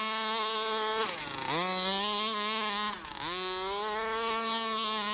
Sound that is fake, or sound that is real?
real